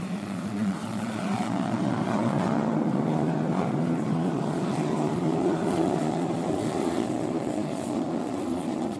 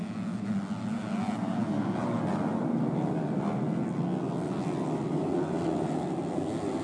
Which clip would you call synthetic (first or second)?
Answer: first